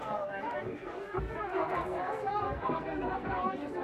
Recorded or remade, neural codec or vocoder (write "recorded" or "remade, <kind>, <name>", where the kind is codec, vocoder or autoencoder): remade, codec, SNAC